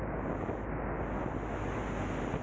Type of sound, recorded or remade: recorded